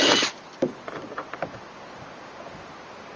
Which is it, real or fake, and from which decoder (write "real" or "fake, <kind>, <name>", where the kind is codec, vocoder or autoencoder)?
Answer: real